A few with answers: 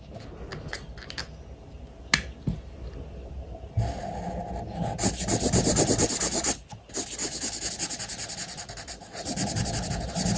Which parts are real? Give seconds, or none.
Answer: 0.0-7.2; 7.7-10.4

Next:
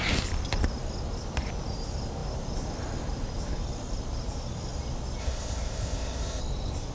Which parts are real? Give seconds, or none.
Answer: 0.0-5.2; 6.4-6.9

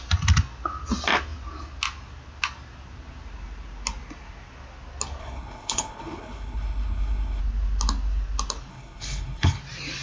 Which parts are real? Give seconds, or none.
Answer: 0.0-5.2; 7.4-8.7; 9.6-10.0

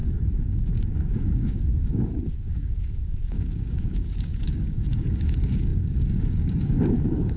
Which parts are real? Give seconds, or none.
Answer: none